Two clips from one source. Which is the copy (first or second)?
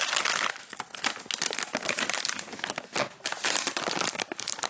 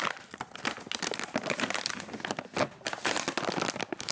second